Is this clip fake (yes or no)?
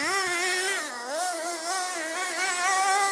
no